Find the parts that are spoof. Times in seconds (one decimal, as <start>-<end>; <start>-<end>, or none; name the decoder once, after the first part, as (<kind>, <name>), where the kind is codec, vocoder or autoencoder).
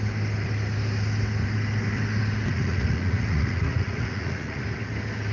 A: 2.5-4.6 (vocoder, Vocos)